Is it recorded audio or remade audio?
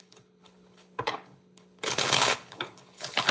remade